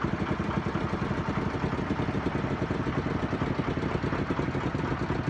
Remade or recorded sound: recorded